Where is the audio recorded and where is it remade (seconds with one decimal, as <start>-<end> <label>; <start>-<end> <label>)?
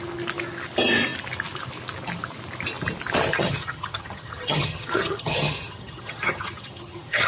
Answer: 0.0-3.3 recorded; 3.3-7.3 remade